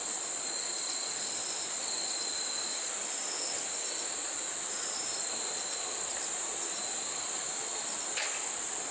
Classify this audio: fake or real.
real